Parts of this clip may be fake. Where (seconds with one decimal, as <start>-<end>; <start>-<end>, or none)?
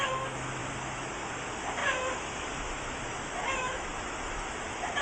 0.0-5.0